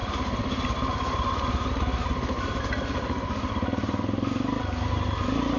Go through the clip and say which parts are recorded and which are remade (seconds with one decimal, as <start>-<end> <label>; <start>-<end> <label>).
0.0-5.6 recorded